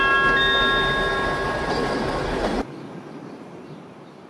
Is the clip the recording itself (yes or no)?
yes